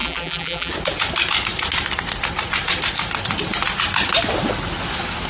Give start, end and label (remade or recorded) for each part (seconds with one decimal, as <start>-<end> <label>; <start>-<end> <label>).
0.0-0.7 remade; 0.7-5.3 recorded